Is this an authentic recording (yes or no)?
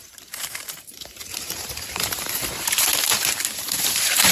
no